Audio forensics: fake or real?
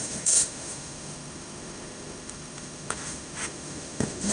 fake